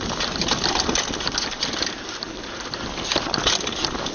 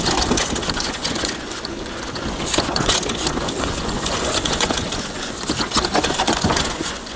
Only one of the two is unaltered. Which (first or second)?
first